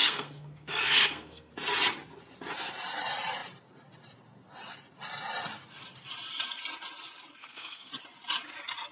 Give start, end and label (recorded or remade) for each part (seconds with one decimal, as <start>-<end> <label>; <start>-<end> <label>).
0.0-1.5 remade; 1.5-7.4 recorded; 7.4-7.9 remade; 7.9-8.9 recorded